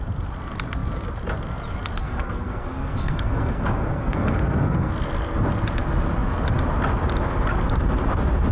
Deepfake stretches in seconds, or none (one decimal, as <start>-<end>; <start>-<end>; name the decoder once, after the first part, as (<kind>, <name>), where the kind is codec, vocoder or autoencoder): 2.0-4.9 (codec, SNAC)